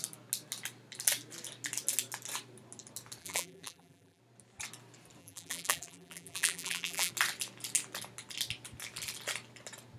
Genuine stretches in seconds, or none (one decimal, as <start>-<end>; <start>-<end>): 0.0-3.2; 4.2-5.2; 7.1-10.0